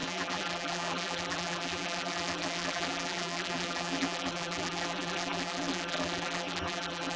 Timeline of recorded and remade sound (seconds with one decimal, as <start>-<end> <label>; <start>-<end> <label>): 0.0-7.2 remade

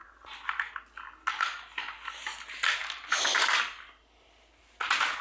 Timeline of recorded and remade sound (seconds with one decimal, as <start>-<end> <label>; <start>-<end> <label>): 0.0-5.2 recorded

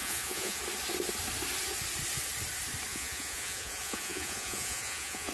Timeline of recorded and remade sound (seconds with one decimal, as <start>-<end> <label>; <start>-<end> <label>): 0.0-0.6 remade; 0.6-2.9 recorded; 2.9-5.3 remade